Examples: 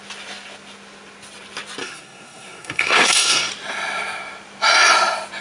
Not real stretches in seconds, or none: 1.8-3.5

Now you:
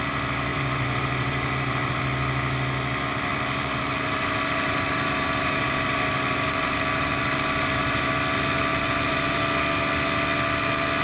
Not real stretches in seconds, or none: 0.5-2.0; 3.3-8.1; 8.7-9.4

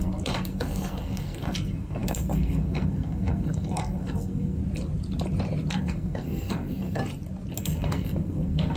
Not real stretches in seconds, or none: 0.0-4.6; 5.7-7.0; 7.6-8.8

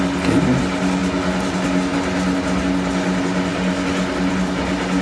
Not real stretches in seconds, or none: none